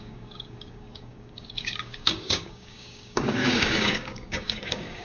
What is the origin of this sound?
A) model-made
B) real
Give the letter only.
A